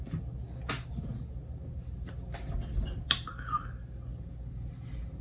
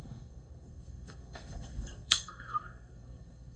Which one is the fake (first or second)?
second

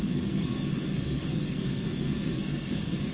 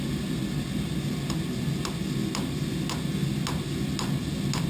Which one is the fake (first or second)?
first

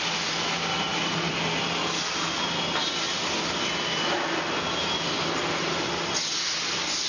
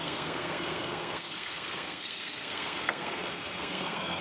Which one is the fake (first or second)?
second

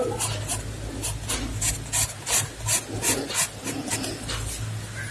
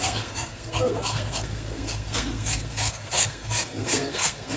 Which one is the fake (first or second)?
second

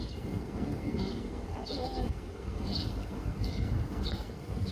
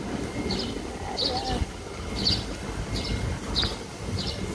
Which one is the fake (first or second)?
first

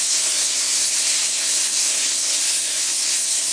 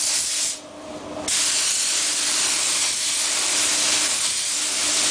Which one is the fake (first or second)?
first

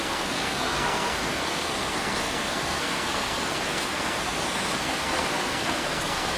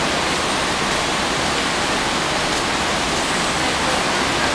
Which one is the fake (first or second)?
first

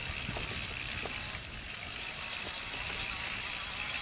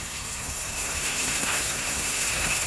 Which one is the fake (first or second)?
second